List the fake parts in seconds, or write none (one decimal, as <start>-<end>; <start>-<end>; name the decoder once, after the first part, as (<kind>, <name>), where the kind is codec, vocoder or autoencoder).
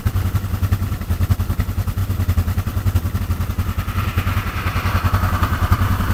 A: 0.0-6.1 (vocoder, BigVGAN v2)